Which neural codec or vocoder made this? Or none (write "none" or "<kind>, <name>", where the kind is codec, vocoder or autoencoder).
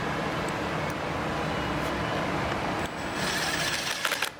none